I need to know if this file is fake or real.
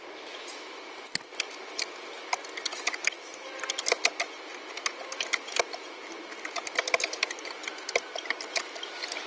real